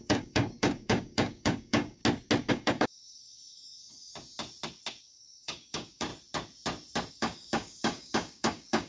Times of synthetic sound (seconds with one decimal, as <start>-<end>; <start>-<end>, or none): 0.0-2.0; 2.5-4.1; 5.0-6.1; 7.1-8.9